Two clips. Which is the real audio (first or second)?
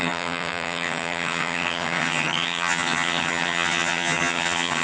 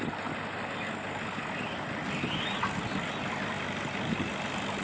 second